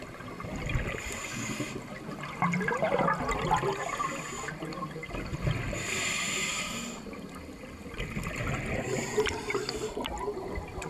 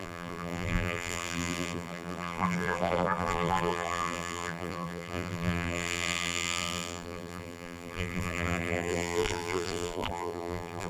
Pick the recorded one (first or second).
first